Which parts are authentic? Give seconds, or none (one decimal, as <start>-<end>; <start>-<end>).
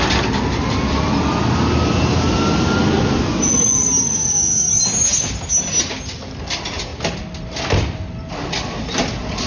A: 0.0-9.5